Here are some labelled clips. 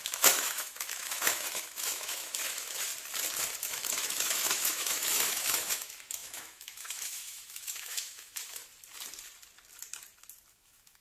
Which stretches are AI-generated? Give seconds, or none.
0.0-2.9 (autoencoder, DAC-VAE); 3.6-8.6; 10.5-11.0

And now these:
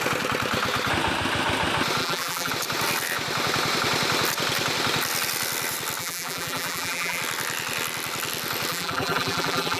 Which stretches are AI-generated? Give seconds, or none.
2.0-2.5 (vocoder, BigVGAN v2); 6.0-7.2; 8.7-9.8